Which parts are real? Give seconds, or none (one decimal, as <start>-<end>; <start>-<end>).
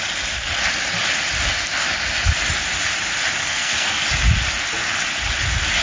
0.0-3.4; 4.0-5.8